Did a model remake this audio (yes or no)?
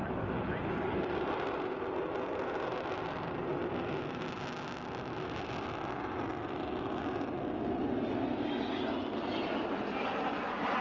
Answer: no